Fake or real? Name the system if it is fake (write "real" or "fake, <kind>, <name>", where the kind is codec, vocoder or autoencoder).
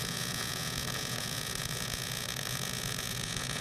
fake, vocoder, Vocos